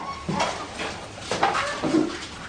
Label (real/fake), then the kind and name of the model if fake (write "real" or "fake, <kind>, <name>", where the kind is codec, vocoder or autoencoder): real